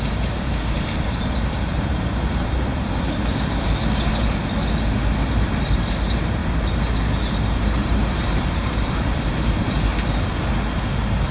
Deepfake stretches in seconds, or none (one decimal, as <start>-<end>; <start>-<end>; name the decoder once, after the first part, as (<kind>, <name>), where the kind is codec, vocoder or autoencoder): 0.0-2.7 (vocoder, BigVGAN v2); 5.3-6.4; 7.6-9.9